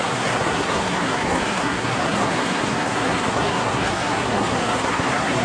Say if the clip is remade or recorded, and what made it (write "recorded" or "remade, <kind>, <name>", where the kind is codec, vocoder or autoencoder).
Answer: remade, codec, SNAC